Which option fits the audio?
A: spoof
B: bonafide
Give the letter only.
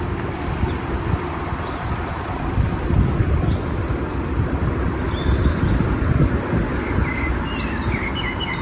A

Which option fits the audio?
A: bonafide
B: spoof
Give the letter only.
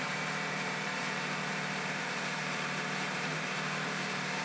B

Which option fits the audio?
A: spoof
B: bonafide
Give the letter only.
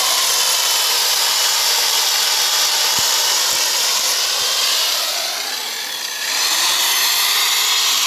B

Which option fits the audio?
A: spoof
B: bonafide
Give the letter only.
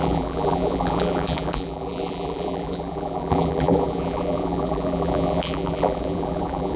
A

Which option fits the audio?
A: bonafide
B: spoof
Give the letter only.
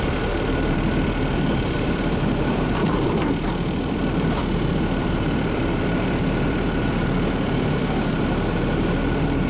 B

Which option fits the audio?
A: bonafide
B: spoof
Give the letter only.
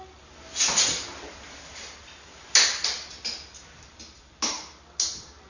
A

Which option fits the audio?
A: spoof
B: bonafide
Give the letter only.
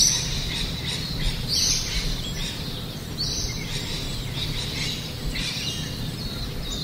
B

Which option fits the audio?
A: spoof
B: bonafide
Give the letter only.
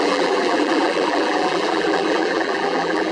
A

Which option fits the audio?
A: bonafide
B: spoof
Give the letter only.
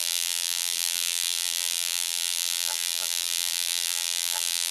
B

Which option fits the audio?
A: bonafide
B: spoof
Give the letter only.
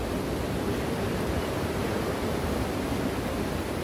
B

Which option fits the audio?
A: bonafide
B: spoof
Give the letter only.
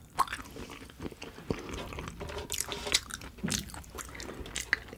A